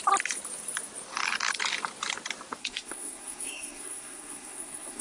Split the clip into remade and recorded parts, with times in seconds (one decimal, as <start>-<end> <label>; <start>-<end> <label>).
0.0-2.6 recorded; 2.6-5.0 remade